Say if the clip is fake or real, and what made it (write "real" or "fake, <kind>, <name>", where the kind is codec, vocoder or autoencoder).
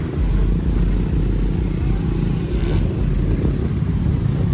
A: real